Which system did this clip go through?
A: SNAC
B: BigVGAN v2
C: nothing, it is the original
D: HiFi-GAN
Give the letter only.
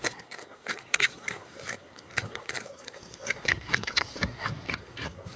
A